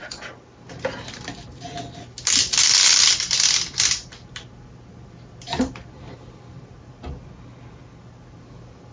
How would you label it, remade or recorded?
recorded